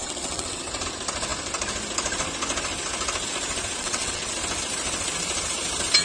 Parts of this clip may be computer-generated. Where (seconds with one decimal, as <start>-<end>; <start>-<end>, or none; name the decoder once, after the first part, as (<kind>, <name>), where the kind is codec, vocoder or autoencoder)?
0.0-0.6 (vocoder, WaveNeXt); 3.8-4.3